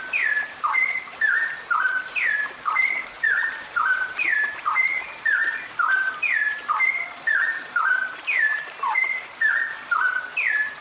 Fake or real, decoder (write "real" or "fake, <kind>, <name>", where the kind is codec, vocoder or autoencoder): fake, vocoder, BigVGAN v2